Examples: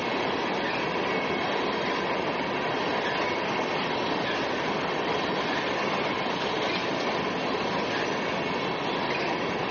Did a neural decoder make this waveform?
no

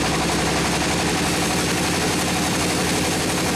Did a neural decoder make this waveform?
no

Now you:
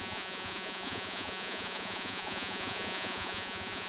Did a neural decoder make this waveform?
yes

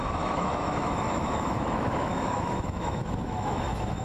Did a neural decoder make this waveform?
yes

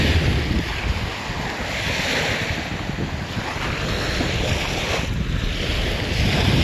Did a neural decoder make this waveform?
no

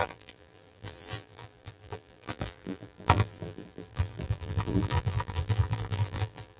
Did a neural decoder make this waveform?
yes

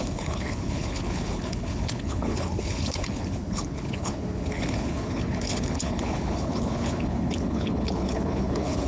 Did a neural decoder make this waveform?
yes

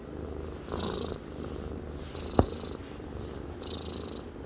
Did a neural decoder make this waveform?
no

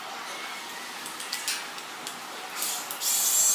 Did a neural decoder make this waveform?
no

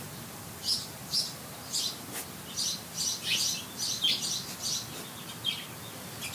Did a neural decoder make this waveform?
no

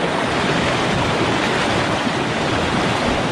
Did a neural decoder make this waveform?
yes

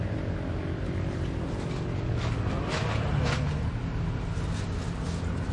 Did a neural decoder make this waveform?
no